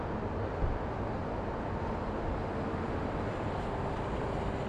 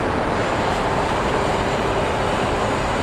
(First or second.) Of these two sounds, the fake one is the second